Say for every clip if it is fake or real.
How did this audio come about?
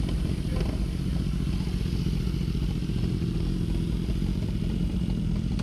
real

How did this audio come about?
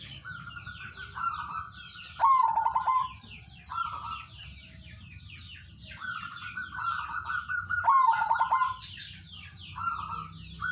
real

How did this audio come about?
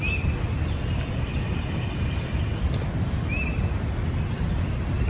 real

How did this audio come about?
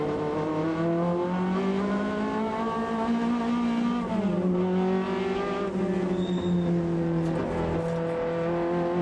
real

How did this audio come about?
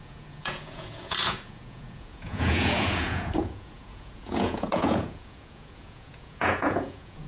fake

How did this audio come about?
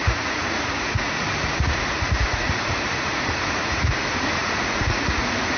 fake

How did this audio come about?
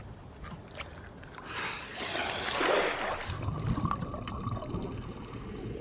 real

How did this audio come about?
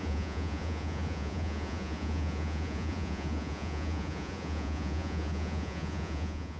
fake